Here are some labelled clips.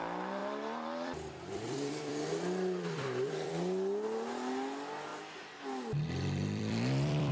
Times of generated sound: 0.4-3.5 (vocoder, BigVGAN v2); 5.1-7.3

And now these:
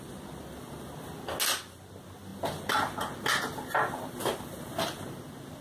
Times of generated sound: none

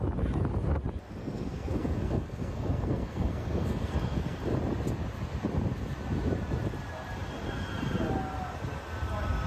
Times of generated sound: 1.2-4.4 (codec, SNAC)

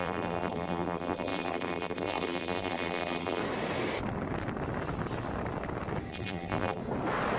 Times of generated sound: 0.0-3.4 (vocoder, BigVGAN v2); 6.1-6.8

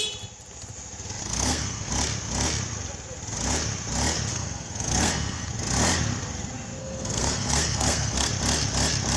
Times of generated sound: 1.2-1.9 (codec, SNAC); 4.3-5.5; 6.8-8.3